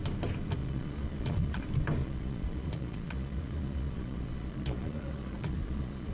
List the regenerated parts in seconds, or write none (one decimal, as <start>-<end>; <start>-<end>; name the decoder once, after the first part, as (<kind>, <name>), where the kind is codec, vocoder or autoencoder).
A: 0.6-1.6 (vocoder, Vocos); 2.0-6.1